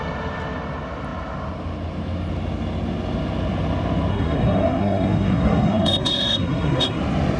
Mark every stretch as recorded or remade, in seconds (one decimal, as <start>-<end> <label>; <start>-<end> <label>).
0.0-4.1 recorded; 4.1-7.0 remade; 7.0-7.4 recorded